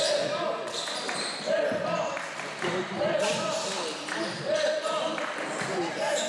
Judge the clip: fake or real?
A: fake